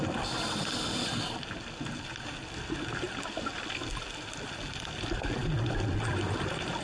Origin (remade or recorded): recorded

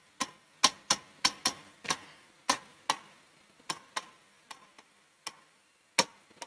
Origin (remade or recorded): recorded